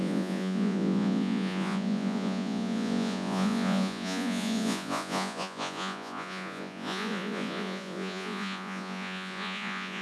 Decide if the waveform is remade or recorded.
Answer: remade